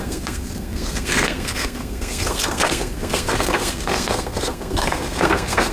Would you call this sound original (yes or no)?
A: no